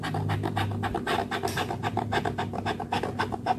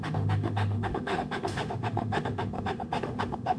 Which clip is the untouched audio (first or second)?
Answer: first